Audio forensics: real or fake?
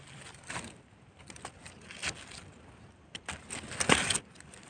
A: real